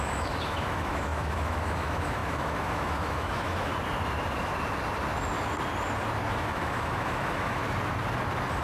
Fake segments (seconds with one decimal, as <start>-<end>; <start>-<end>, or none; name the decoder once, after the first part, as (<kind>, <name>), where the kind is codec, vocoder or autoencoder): 0.0-3.7 (autoencoder, DAC-VAE); 6.3-7.6